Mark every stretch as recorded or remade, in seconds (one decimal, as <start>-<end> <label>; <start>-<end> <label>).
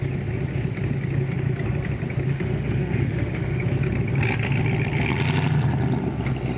0.0-2.3 recorded; 2.3-3.6 remade; 3.6-6.6 recorded